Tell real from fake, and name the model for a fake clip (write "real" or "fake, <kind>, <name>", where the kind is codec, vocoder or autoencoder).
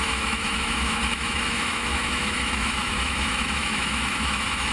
fake, autoencoder, DAC-VAE